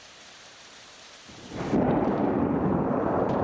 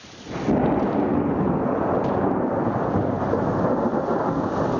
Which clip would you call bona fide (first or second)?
second